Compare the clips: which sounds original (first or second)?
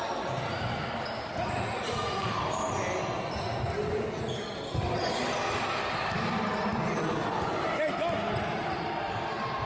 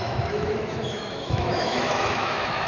first